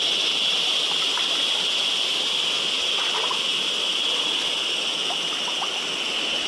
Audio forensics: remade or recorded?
recorded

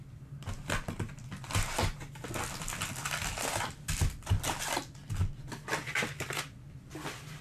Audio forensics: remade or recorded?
recorded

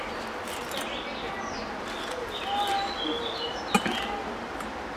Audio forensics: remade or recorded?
recorded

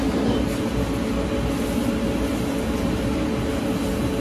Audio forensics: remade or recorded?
recorded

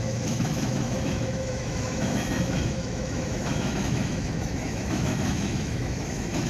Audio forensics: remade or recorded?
remade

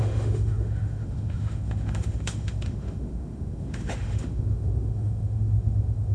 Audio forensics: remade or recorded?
remade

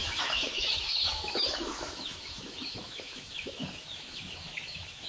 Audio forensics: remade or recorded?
remade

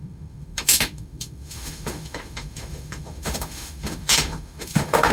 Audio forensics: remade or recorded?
remade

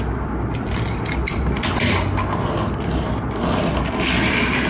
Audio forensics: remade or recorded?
recorded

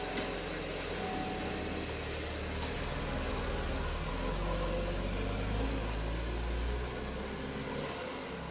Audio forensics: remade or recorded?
recorded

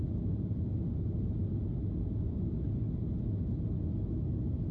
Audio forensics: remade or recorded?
recorded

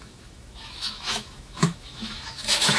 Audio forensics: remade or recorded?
remade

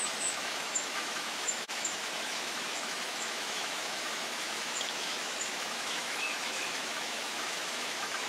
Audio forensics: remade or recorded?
remade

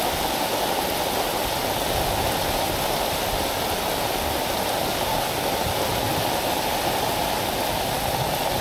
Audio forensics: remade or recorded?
recorded